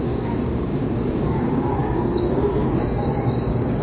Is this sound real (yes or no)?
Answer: no